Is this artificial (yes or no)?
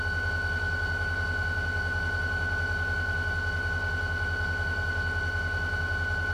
no